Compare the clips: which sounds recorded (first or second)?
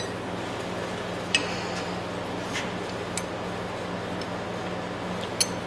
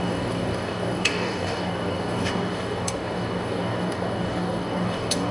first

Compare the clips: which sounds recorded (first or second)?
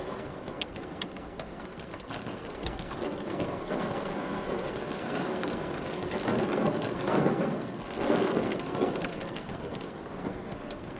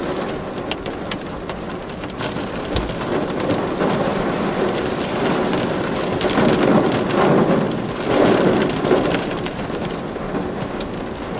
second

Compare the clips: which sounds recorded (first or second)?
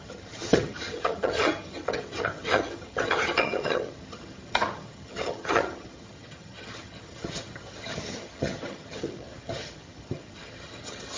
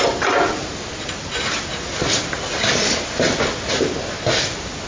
second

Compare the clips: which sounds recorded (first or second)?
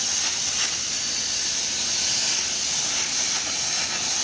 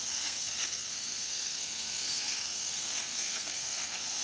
first